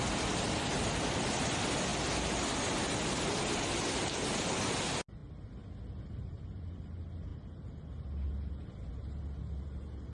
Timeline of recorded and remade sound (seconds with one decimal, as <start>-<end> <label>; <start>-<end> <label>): 0.0-10.1 recorded